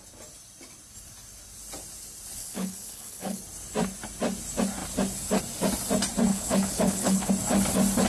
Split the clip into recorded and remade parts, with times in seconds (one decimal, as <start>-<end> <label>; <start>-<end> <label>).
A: 0.0-2.4 recorded; 2.4-3.4 remade; 3.4-6.3 recorded; 6.3-7.3 remade; 7.3-8.1 recorded